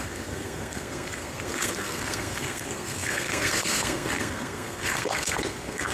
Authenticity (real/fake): fake